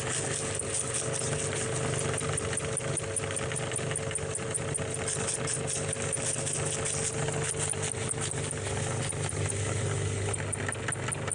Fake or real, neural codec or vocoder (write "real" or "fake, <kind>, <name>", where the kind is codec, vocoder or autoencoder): real